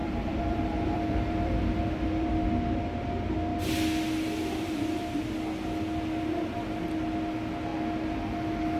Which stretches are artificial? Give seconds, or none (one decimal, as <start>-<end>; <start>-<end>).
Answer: 0.0-2.3